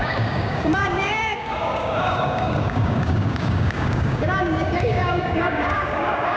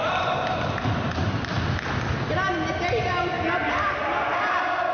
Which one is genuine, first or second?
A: second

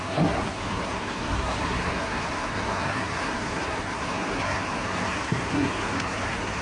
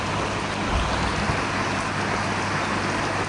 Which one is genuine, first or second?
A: second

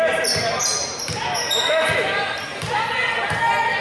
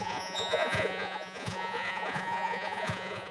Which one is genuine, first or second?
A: first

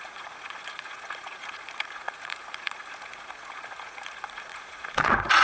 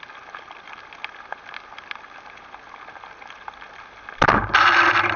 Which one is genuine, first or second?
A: second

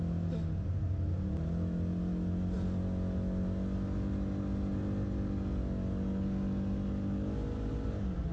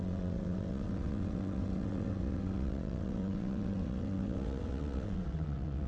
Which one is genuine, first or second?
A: first